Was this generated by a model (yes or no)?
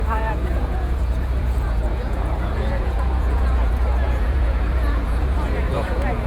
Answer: yes